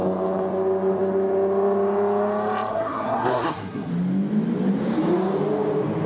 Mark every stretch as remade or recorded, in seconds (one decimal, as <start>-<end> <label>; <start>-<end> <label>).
0.0-2.7 recorded; 2.7-3.9 remade; 3.9-6.1 recorded